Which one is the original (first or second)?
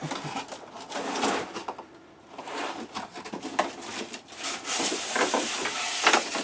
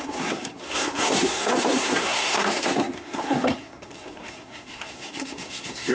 first